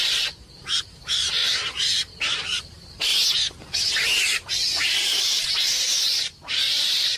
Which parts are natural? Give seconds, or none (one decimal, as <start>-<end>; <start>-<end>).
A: 3.1-4.2